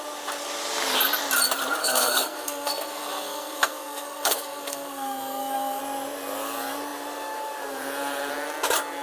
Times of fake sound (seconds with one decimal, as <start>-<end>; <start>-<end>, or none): 1.8-5.8